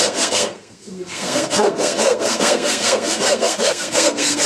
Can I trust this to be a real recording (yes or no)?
no